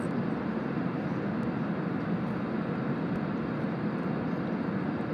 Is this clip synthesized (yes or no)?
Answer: no